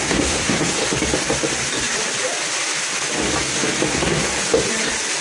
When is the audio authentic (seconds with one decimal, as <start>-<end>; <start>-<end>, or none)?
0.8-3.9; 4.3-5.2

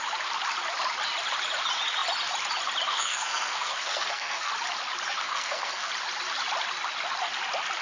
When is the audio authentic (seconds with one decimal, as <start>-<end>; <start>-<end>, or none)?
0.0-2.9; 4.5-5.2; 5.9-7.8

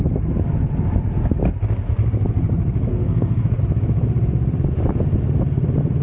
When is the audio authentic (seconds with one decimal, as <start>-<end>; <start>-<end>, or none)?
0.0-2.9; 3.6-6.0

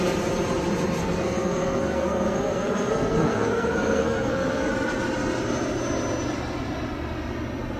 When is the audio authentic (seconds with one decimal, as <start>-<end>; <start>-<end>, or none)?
0.0-1.0; 4.7-7.8

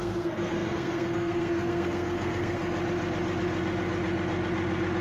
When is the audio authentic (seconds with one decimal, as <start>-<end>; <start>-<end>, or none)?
2.6-5.0